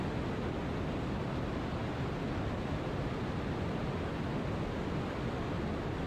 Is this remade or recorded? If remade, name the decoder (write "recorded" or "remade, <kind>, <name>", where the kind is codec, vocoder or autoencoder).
recorded